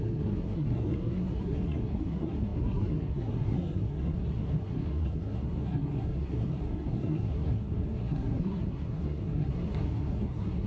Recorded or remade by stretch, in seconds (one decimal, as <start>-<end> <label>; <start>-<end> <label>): 0.0-10.7 remade